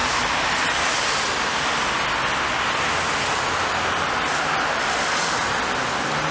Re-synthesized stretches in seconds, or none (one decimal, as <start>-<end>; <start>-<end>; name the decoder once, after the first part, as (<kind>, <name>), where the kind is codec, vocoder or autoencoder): none